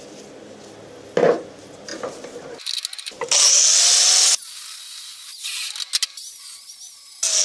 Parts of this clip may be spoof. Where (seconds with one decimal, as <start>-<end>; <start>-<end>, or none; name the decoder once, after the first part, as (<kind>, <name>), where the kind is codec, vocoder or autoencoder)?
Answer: none